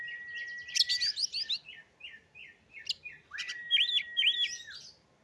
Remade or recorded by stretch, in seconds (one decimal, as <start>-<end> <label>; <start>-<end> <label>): 0.0-5.2 recorded